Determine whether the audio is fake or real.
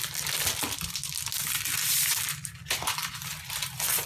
real